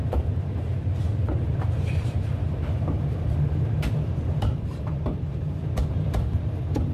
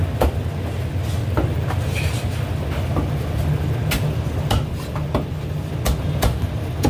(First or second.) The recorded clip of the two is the second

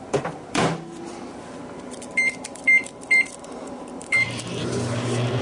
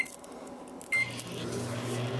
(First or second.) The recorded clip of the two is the second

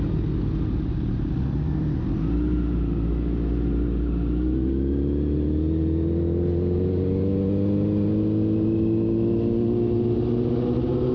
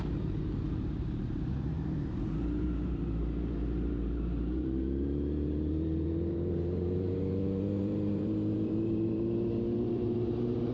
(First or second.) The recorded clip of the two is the first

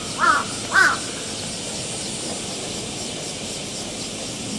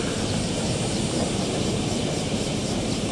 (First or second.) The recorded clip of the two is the first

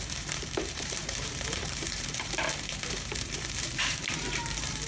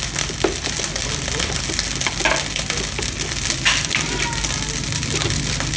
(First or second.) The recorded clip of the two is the second